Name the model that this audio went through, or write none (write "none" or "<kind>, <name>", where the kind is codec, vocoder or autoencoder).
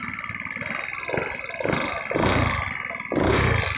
none